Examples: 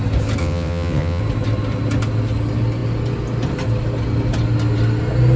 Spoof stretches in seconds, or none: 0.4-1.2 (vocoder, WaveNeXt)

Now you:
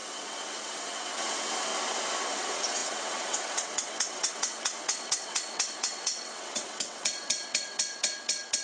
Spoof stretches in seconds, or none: 0.0-1.7 (vocoder, WaveNeXt); 2.2-8.6

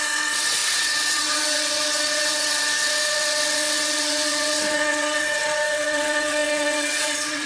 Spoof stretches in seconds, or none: 0.0-7.5 (vocoder, WaveNeXt)

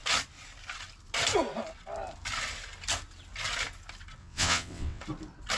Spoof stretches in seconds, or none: 4.2-5.0 (vocoder, WaveNeXt)

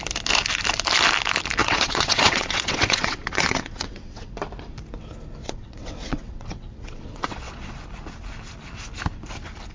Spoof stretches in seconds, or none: 1.6-4.3 (vocoder, WaveNeXt); 5.4-7.8